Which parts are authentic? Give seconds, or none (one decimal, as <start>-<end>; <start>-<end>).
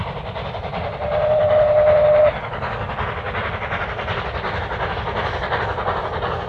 0.0-2.2; 2.9-6.5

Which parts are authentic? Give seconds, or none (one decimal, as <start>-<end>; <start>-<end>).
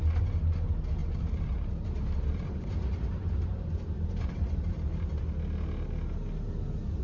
0.0-1.0; 5.2-7.0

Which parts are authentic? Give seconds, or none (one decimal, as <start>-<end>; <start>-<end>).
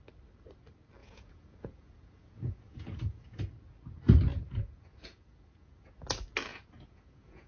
0.0-1.0; 3.4-4.3; 5.9-6.5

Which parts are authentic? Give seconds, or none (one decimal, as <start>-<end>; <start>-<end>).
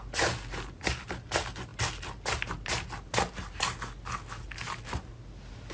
0.0-5.7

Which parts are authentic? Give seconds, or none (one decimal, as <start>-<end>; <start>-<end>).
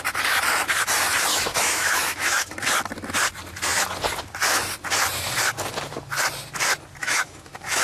0.0-1.3; 2.5-7.0